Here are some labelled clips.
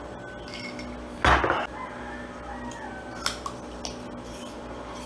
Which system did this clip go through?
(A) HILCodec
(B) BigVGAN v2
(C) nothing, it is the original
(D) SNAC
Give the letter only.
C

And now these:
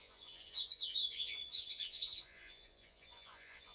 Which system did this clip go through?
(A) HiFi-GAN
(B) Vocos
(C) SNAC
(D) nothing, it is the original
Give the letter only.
B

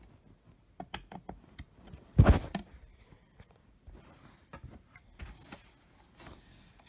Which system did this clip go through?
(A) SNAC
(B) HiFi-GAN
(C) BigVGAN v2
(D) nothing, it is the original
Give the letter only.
D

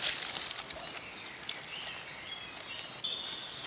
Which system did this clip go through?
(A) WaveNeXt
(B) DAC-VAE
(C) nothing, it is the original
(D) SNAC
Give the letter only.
C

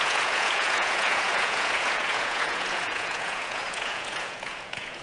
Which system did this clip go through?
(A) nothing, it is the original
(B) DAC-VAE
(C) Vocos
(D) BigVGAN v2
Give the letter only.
C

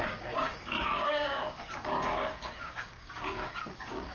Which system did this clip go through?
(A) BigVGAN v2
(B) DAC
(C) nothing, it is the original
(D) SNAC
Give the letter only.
B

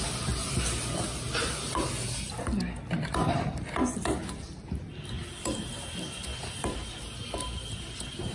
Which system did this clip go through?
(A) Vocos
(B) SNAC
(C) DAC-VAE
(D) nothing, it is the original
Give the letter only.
D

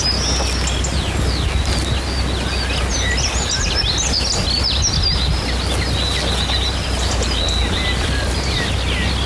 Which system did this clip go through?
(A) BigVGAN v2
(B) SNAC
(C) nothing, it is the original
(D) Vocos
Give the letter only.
C